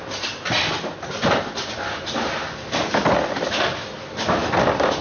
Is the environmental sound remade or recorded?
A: recorded